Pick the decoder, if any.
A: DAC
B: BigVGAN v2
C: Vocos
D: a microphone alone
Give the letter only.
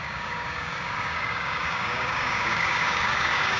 A